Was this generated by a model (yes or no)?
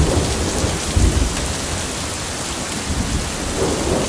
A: no